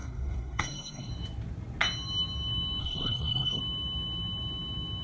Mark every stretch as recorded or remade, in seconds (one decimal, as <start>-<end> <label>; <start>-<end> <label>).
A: 0.0-1.1 remade; 1.1-2.8 recorded; 2.8-3.6 remade; 3.6-5.0 recorded